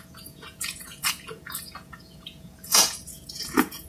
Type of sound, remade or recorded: remade